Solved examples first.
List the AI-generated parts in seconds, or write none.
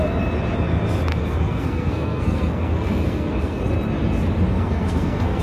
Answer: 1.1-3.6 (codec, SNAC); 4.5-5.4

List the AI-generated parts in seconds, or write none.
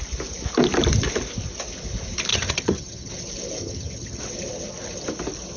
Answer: 2.3-3.1 (vocoder, HiFi-GAN); 3.6-4.2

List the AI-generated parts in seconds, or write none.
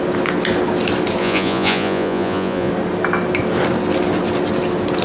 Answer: 1.2-2.7 (vocoder, Vocos)